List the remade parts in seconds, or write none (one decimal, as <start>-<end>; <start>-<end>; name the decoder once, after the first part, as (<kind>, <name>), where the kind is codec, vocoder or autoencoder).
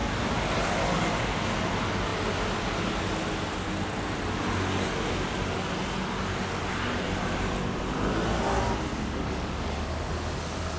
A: 8.9-10.1 (codec, DAC)